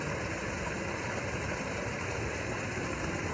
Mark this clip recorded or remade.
recorded